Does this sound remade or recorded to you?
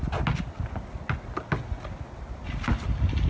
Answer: recorded